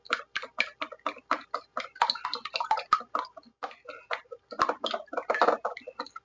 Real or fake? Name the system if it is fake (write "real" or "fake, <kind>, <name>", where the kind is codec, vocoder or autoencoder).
real